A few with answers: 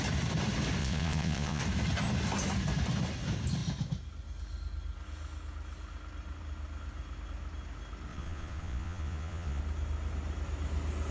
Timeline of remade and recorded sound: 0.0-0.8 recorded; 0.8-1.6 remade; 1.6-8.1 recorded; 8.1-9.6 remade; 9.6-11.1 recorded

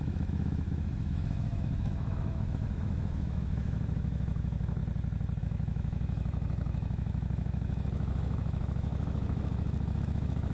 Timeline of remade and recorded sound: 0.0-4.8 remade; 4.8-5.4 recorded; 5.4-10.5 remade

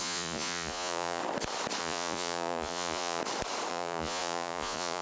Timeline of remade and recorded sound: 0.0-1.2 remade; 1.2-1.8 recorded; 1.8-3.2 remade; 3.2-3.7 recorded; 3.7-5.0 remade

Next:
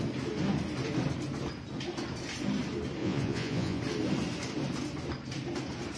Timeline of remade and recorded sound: 0.0-3.0 recorded; 3.0-3.8 remade; 3.8-6.0 recorded

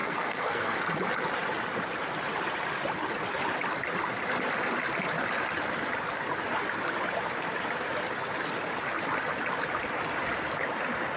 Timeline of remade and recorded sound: 0.0-0.8 remade; 0.8-11.2 recorded

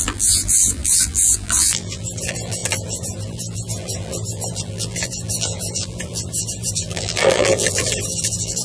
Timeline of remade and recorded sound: 0.0-8.6 remade

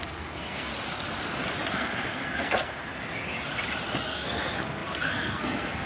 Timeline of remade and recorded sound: 0.0-0.7 remade; 0.7-1.7 recorded; 1.7-2.9 remade; 2.9-4.0 recorded; 4.0-5.9 remade